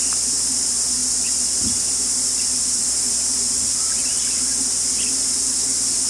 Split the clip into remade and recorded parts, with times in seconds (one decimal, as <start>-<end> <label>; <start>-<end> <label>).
0.0-1.0 recorded; 1.0-4.1 remade; 4.1-6.1 recorded